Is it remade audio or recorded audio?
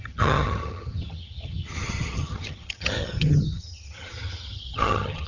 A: remade